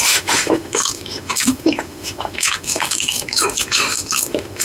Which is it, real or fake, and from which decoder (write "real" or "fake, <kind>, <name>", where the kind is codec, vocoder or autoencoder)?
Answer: fake, autoencoder, DAC-VAE